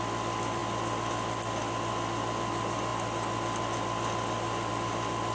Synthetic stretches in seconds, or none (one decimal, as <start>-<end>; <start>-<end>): none